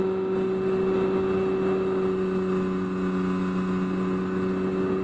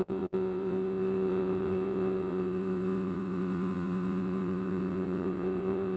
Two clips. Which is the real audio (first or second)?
first